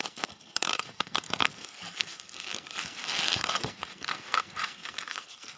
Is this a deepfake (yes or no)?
yes